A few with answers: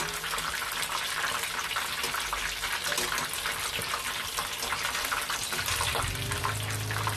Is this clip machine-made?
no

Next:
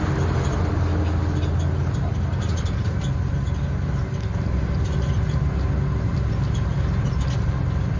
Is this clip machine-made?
no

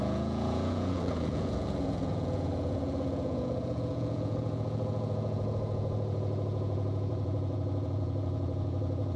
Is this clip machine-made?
yes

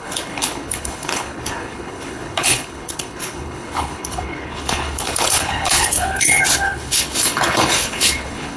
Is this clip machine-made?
yes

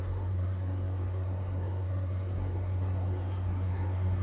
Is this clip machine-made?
yes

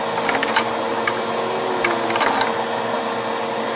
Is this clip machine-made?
no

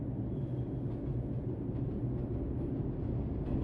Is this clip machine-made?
no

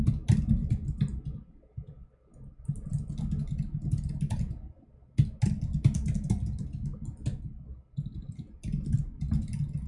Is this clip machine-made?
no